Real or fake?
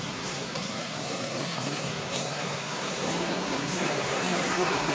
fake